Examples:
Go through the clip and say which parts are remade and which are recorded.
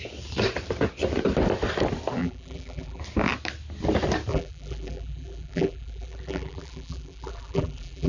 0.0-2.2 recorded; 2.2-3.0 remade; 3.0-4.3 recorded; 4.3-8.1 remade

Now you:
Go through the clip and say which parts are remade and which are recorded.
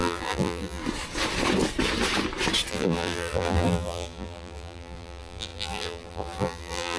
0.0-0.8 remade; 0.8-2.7 recorded; 2.7-7.0 remade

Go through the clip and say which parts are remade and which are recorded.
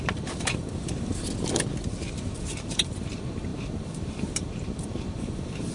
0.0-1.1 remade; 1.1-2.1 recorded; 2.1-5.7 remade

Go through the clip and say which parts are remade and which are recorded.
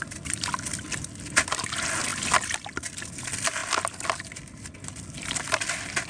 0.0-2.1 remade; 2.1-2.9 recorded; 2.9-3.6 remade; 3.6-4.2 recorded; 4.2-6.1 remade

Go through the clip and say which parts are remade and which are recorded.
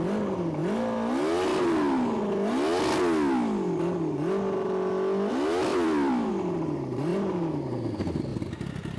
0.0-5.7 recorded; 5.7-6.3 remade; 6.3-9.0 recorded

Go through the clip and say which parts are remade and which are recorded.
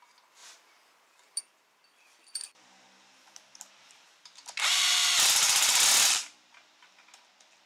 0.0-0.4 recorded; 0.4-1.4 remade; 1.4-7.7 recorded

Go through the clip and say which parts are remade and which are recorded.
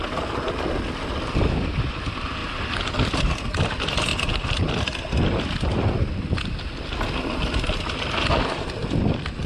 0.0-9.5 recorded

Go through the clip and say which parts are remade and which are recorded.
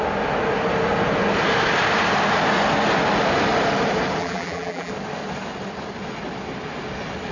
0.0-4.2 recorded; 4.2-4.9 remade; 4.9-7.3 recorded